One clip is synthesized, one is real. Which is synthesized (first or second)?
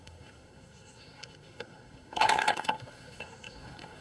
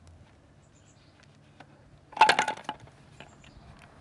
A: first